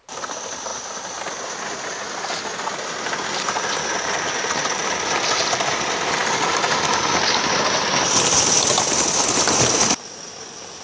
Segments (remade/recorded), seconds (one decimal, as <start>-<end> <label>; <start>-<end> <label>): 0.0-10.8 recorded